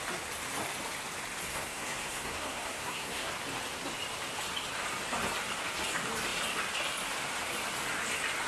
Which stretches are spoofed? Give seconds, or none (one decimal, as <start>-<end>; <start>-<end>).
1.5-3.3